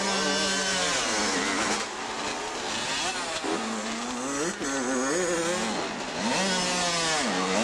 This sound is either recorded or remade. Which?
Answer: recorded